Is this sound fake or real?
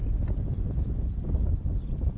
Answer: real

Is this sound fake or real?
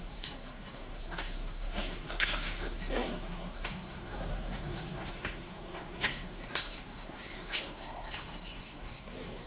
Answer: fake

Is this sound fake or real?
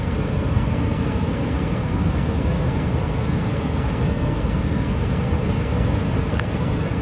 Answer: fake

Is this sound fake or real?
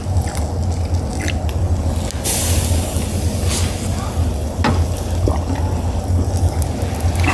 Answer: real